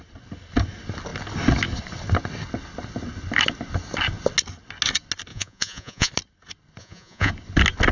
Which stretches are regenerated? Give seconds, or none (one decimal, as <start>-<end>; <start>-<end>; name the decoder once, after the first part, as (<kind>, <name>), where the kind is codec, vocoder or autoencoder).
5.3-6.1 (vocoder, Vocos); 6.8-7.3